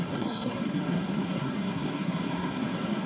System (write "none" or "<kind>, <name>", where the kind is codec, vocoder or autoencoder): codec, SNAC